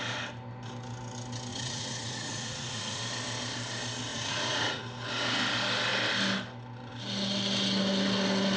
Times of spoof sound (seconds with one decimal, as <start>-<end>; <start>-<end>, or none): 1.5-3.0; 4.1-4.8